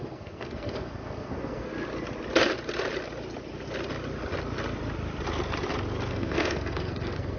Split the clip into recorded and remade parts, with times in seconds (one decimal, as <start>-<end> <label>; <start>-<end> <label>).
0.0-1.7 remade; 1.7-6.1 recorded; 6.1-7.4 remade